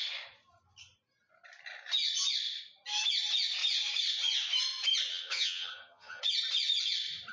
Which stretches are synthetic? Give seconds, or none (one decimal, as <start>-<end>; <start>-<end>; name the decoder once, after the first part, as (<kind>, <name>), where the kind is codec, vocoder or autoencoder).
5.1-6.2 (vocoder, HiFi-GAN)